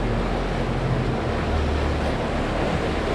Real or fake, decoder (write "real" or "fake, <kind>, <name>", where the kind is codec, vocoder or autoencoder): real